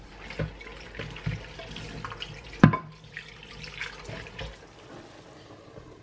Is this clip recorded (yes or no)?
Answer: yes